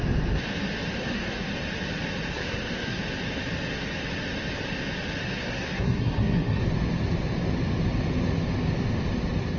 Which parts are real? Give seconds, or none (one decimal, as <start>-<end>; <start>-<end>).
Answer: 0.0-0.9; 1.5-2.3; 3.0-5.2; 6.6-9.6